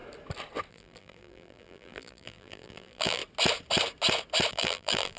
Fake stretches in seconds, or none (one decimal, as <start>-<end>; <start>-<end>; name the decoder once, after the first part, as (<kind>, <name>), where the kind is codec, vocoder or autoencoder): 0.7-3.2 (vocoder, BigVGAN v2); 4.5-5.2